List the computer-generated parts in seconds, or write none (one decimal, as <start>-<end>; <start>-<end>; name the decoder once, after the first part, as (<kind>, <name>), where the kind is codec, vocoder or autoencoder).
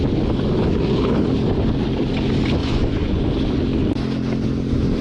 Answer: 2.6-3.2 (vocoder, Vocos)